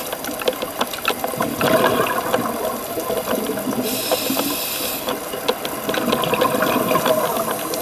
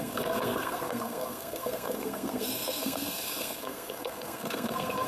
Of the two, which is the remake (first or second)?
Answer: second